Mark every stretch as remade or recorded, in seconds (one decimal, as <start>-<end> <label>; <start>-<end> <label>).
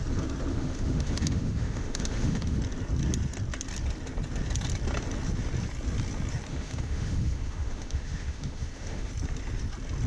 0.0-0.5 recorded; 0.5-2.6 remade; 2.6-6.5 recorded; 6.5-9.1 remade; 9.1-10.1 recorded